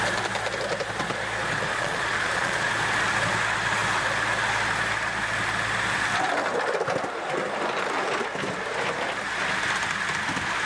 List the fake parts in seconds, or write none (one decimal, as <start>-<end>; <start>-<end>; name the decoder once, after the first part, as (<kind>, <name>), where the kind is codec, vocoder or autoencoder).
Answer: 1.7-2.7 (vocoder, Vocos)